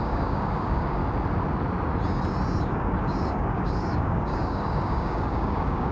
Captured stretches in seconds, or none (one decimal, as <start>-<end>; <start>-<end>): 1.0-2.6